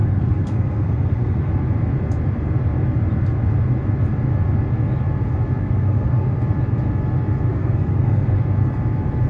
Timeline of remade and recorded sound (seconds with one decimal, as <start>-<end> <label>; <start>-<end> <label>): 0.0-1.5 remade; 1.5-5.6 recorded; 5.6-6.4 remade; 6.4-7.5 recorded; 7.5-8.4 remade; 8.4-9.3 recorded